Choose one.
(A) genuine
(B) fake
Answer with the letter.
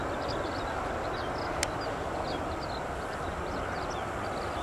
A